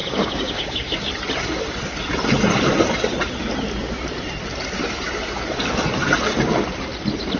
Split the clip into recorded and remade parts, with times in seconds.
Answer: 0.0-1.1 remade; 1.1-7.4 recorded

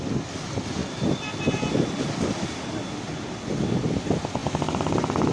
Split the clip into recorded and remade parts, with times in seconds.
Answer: 0.0-5.3 recorded